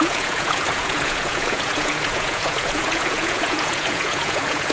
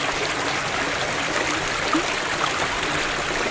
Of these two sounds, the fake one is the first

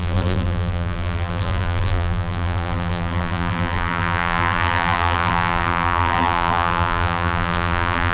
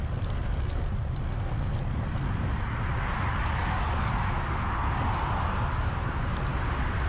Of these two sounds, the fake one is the first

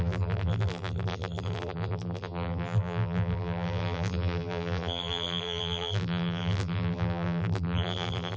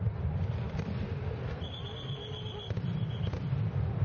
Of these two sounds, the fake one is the first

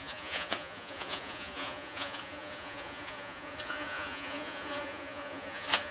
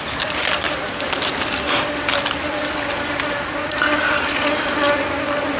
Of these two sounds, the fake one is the first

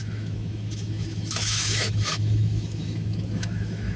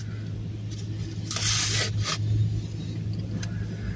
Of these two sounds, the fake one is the first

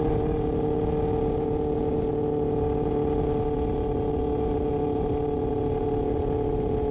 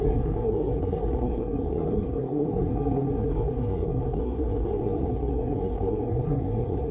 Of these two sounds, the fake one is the second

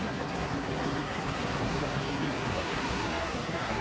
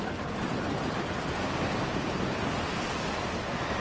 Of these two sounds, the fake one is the first